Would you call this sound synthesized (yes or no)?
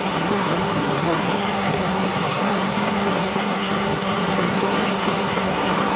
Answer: yes